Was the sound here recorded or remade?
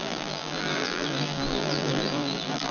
remade